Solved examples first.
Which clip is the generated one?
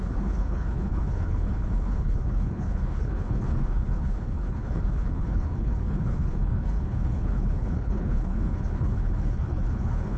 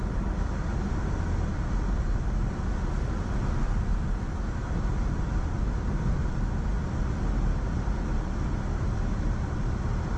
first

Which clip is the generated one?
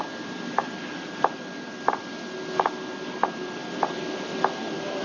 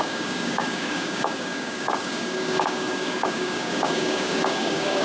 second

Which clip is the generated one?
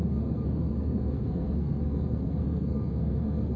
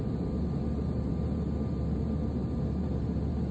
first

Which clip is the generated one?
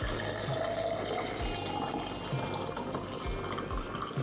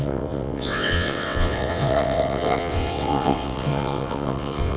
second